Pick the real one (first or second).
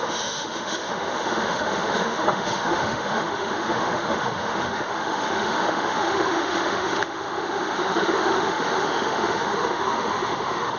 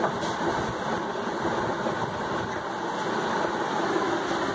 second